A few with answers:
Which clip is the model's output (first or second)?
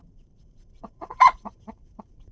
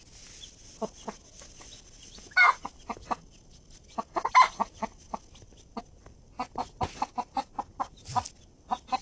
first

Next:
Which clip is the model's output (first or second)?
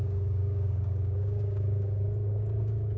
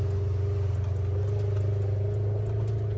first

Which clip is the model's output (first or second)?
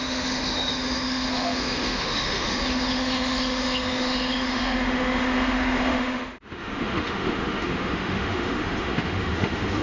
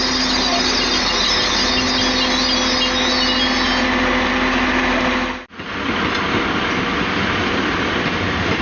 first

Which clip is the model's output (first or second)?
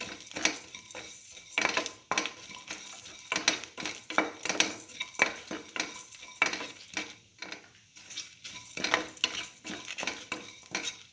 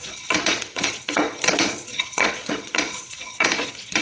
second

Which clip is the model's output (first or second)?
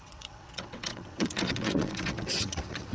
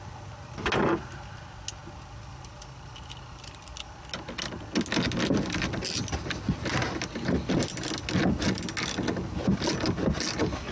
first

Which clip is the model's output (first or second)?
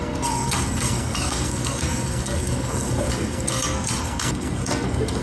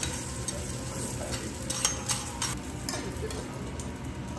first